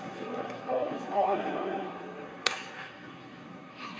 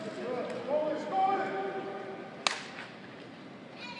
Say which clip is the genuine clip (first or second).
second